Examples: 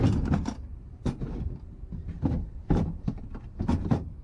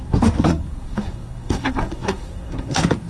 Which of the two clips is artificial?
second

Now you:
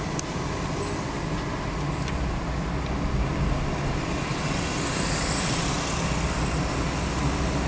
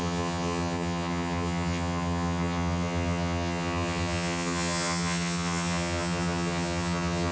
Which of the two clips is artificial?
second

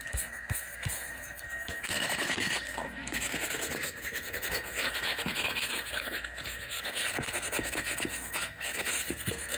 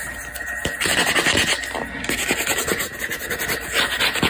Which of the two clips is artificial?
first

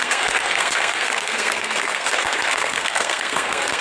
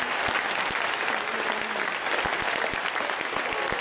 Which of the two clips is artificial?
first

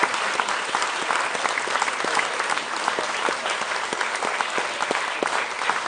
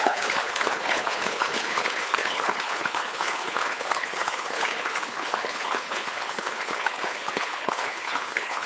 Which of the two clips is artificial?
second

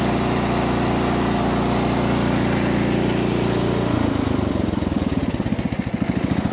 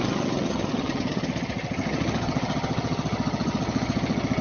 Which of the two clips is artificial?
second